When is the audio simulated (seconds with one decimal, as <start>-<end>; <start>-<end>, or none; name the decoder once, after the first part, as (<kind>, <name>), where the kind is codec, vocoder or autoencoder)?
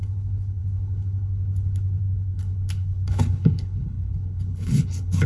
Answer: 0.0-5.3 (codec, HILCodec)